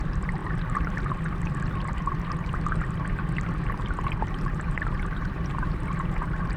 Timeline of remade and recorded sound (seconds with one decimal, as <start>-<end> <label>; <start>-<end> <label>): 0.0-0.4 remade; 0.4-4.4 recorded; 4.4-6.6 remade